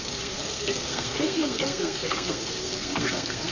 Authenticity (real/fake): fake